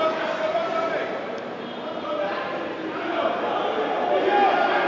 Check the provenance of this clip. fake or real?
real